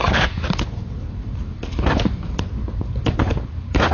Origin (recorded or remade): remade